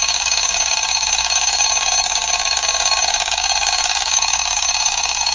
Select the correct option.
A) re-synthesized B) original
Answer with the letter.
A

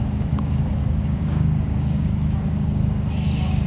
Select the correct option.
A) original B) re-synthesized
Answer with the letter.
B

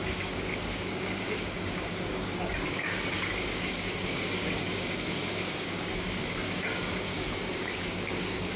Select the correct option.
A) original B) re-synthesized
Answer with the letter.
B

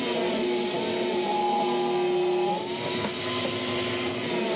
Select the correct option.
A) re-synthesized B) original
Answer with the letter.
B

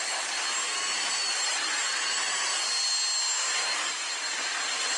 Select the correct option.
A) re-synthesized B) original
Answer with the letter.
B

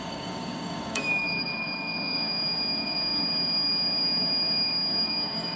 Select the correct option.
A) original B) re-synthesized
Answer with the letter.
B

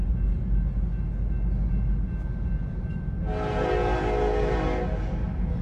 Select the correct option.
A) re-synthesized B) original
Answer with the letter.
B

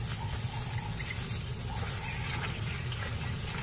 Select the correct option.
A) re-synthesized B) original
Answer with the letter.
B